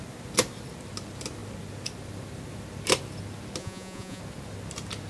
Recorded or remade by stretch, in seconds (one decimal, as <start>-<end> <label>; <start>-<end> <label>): 0.0-3.6 recorded; 3.6-4.2 remade; 4.2-5.1 recorded